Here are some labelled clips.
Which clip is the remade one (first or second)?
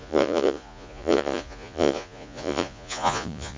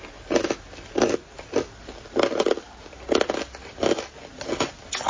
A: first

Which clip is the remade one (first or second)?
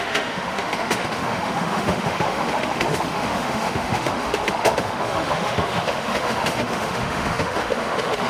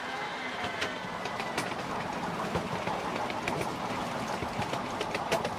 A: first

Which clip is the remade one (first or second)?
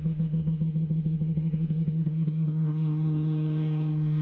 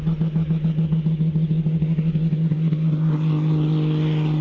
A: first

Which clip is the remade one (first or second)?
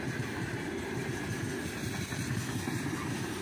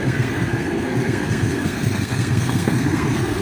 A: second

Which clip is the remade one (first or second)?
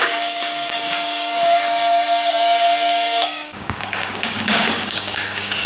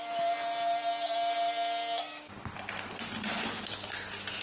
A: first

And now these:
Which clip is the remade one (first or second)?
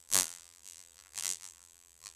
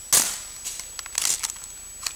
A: first